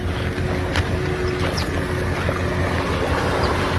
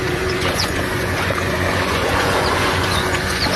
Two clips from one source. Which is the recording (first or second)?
first